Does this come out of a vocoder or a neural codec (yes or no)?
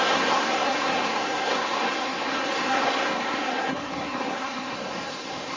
yes